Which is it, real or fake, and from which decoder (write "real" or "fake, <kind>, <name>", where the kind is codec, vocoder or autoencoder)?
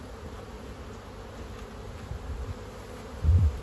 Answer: real